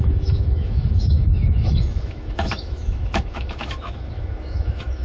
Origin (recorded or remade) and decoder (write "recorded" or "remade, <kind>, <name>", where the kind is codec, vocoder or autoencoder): remade, autoencoder, DAC-VAE